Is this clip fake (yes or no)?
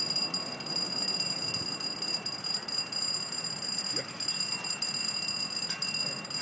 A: no